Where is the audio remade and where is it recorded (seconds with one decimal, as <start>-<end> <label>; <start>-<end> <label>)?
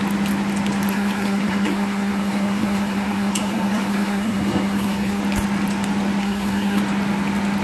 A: 0.0-0.9 recorded; 0.9-5.2 remade; 5.2-6.2 recorded; 6.2-6.8 remade; 6.8-7.6 recorded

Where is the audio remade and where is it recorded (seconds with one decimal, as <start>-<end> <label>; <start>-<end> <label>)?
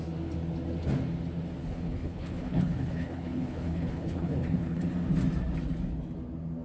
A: 0.0-1.6 recorded; 1.6-4.9 remade; 4.9-6.6 recorded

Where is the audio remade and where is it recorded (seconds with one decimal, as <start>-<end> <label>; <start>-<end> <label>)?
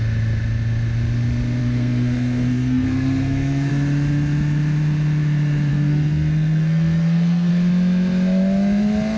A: 0.0-1.6 recorded; 1.6-3.7 remade; 3.7-5.7 recorded; 5.7-7.5 remade; 7.5-9.2 recorded